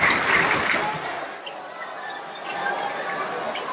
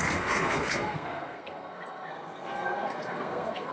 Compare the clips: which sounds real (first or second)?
first